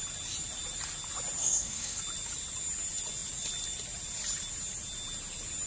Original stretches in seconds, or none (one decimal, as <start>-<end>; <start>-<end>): 0.0-1.4; 2.0-5.7